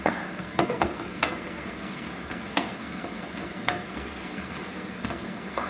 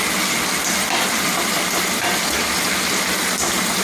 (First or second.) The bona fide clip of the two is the second